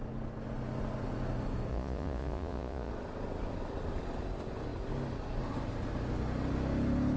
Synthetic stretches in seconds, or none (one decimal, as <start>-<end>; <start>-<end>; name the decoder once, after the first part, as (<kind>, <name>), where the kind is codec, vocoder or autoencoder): 1.7-2.9 (vocoder, Vocos)